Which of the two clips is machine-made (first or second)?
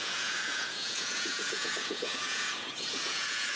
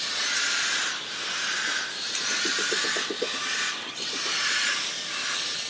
first